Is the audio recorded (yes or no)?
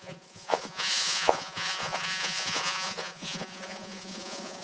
no